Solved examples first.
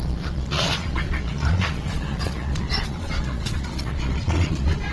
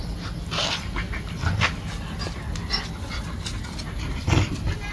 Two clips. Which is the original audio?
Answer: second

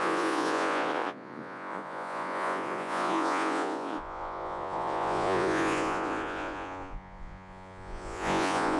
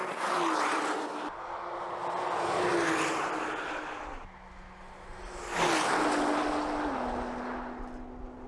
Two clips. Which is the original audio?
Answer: second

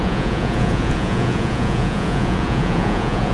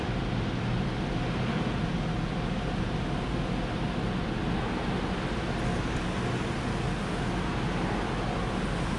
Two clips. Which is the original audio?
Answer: second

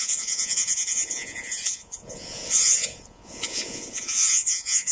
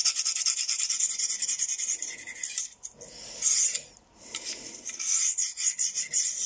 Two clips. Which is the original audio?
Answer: second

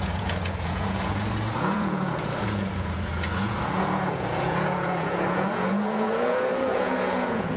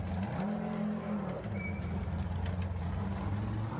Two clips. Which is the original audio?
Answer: second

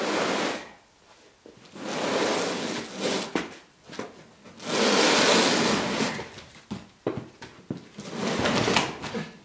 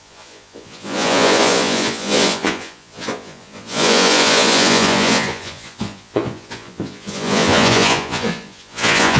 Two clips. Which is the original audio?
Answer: first